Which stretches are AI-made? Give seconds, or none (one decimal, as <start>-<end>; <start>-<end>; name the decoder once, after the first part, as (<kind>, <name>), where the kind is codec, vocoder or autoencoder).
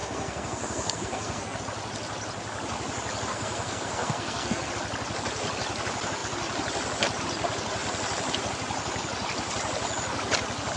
0.0-1.6 (codec, SNAC); 3.3-4.7